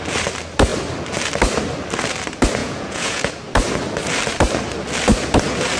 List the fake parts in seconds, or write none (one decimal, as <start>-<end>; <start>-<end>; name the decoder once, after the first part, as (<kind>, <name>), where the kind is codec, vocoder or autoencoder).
2.6-3.3 (vocoder, Vocos)